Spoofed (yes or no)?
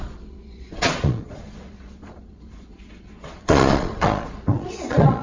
yes